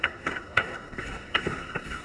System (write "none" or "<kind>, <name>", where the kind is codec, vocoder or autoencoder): codec, SNAC